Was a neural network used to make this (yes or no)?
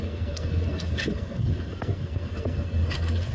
yes